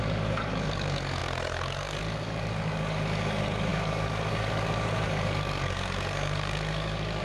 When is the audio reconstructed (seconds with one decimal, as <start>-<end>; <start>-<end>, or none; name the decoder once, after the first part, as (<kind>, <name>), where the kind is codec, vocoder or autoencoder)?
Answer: 0.0-7.2 (codec, DAC)